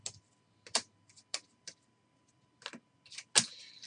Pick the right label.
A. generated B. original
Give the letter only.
B